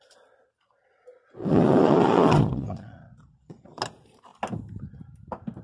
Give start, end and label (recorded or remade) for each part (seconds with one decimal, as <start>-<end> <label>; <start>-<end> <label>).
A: 0.0-1.4 recorded; 1.4-3.8 remade; 3.8-5.6 recorded